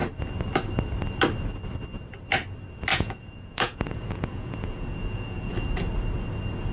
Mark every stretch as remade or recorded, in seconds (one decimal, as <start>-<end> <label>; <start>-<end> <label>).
0.0-2.9 recorded; 2.9-5.5 remade; 5.5-6.7 recorded